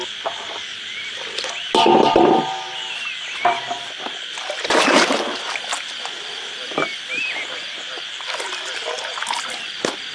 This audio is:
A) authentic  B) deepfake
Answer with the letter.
A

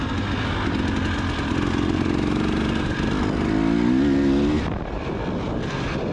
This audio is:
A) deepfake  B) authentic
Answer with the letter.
B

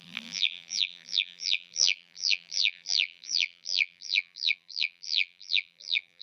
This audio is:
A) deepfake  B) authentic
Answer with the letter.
A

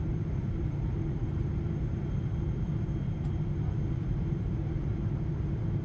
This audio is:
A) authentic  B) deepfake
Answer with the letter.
B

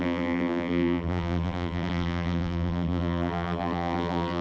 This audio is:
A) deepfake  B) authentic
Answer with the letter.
A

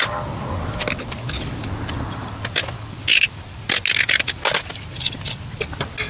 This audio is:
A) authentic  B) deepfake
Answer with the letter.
A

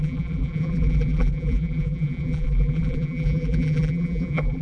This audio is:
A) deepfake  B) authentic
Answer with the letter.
A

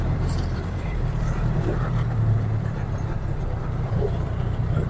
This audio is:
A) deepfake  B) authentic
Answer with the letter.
A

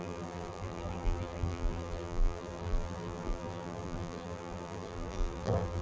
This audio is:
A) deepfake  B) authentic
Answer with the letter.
A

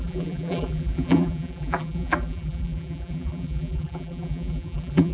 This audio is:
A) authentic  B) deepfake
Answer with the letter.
B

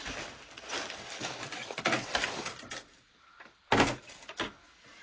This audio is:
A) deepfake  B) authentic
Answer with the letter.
B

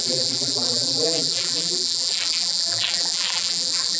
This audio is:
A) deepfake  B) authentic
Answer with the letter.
A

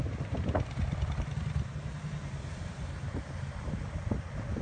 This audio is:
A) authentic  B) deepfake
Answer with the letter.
B